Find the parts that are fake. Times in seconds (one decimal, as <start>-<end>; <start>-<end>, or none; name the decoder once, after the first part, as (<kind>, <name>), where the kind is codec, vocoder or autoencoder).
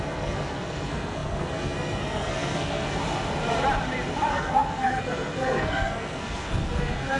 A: 0.0-3.0 (codec, SNAC); 4.3-7.2